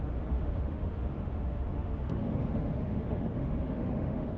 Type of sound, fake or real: fake